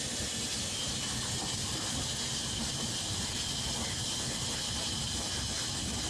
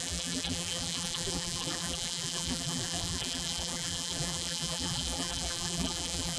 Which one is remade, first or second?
second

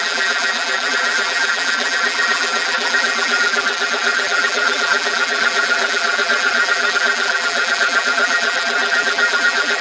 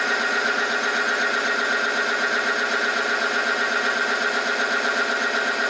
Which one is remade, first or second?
first